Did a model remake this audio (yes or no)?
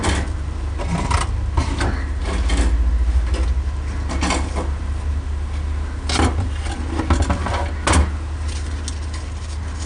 no